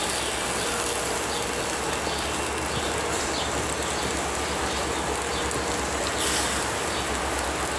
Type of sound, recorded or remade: recorded